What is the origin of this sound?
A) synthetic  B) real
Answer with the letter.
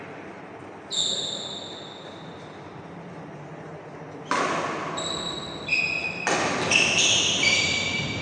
B